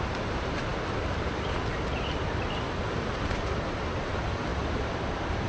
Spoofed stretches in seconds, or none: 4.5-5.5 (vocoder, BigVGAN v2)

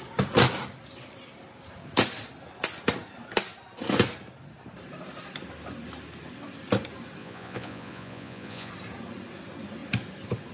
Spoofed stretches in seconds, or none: 7.2-8.7 (vocoder, Vocos)

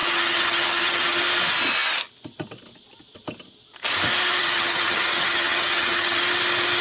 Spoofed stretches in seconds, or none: 0.0-1.2 (vocoder, HiFi-GAN); 4.4-6.2

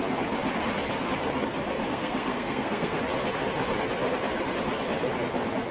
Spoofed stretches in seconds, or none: 1.9-3.0 (codec, SNAC)

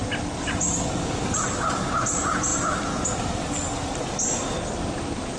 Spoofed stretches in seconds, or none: 0.0-5.4 (vocoder, BigVGAN v2)